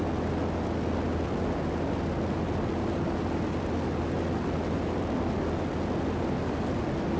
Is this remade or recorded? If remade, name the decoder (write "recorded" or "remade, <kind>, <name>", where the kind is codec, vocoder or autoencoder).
recorded